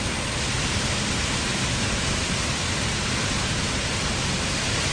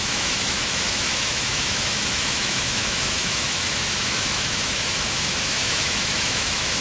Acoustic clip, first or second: first